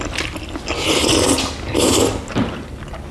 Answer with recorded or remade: recorded